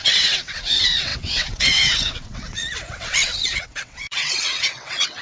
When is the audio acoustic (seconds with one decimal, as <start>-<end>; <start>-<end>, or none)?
none